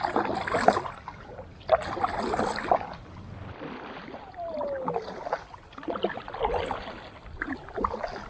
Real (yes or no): yes